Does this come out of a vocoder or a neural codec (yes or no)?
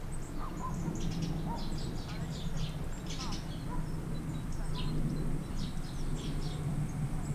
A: no